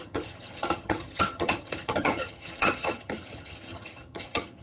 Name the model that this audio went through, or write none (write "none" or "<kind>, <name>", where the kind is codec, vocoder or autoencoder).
vocoder, HiFi-GAN